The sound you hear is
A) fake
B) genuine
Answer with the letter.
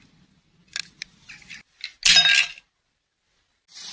B